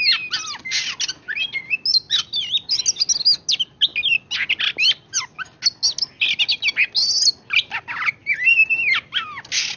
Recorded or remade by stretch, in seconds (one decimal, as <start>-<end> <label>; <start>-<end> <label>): 0.0-1.9 recorded; 1.9-2.7 remade; 2.7-8.2 recorded; 8.2-8.7 remade; 8.7-9.8 recorded